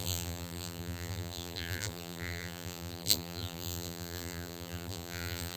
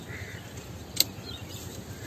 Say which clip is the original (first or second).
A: second